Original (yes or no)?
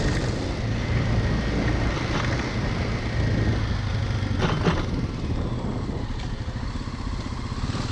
yes